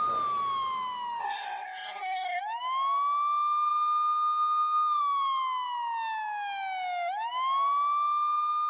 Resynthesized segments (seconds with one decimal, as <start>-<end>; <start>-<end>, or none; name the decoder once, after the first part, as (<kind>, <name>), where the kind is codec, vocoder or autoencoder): 1.2-2.4 (codec, SNAC)